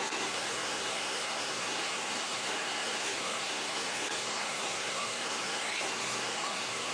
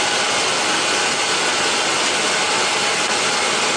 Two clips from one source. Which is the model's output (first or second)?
first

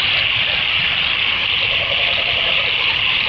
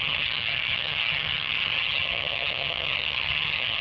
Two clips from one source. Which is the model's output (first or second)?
second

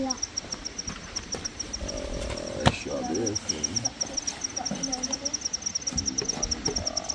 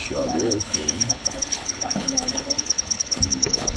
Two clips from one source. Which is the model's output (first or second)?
second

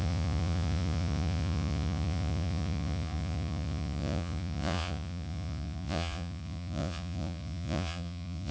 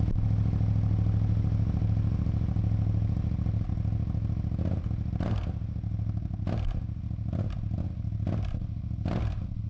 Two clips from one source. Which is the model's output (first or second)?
first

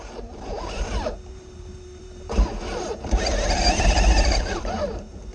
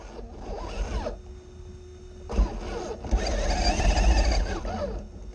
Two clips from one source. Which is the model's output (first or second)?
first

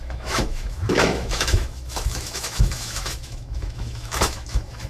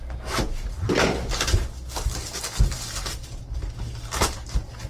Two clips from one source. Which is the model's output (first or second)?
first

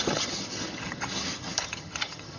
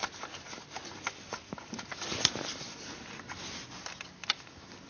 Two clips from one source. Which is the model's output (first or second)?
first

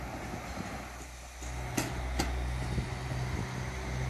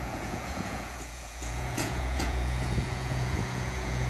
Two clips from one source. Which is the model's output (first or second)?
second